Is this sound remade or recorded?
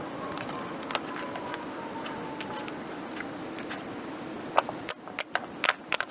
recorded